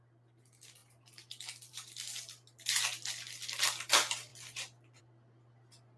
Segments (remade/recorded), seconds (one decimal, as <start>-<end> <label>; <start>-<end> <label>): 0.0-6.0 recorded